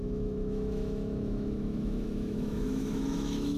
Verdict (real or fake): fake